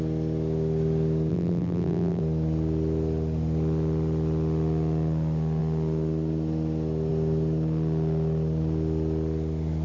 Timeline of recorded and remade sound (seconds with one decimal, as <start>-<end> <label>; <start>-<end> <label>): 0.0-1.3 recorded; 1.3-2.2 remade; 2.2-9.8 recorded